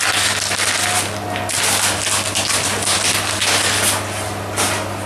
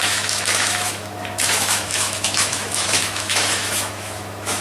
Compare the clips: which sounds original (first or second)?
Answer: first